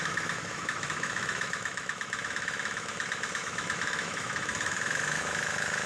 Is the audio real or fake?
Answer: fake